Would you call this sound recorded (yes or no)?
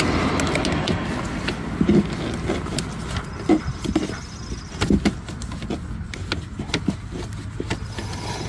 yes